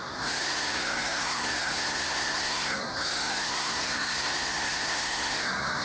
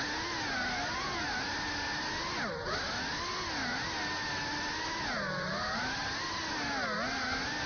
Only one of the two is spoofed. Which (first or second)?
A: first